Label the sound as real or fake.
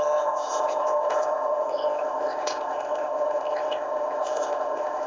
fake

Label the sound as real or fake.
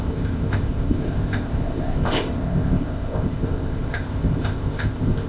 fake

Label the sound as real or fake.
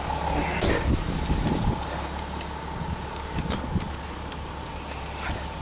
real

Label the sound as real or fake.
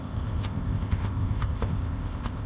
fake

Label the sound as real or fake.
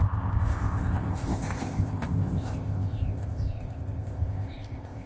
fake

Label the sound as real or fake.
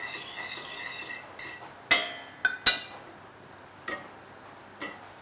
real